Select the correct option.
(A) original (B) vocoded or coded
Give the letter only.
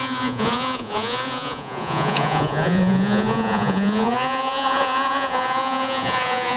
B